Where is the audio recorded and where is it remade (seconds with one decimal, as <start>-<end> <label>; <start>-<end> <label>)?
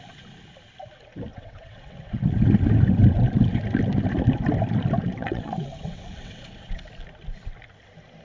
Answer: 0.0-1.3 recorded; 1.3-2.2 remade; 2.2-5.2 recorded; 5.2-6.9 remade; 6.9-8.2 recorded